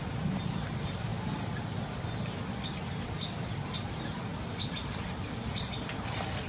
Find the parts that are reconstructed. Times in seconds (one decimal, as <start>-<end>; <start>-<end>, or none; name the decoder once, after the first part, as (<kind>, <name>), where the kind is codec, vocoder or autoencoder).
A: none